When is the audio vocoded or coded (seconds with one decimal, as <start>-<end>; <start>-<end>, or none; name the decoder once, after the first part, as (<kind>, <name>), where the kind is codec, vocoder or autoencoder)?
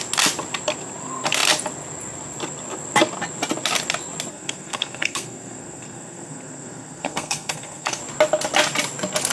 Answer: 4.3-8.0 (codec, SNAC)